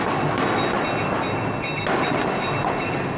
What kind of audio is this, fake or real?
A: real